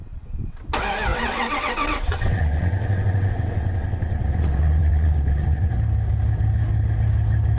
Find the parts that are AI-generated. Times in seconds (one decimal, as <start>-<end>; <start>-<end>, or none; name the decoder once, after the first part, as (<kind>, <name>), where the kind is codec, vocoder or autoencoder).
0.0-0.6 (vocoder, WaveNeXt); 1.1-5.7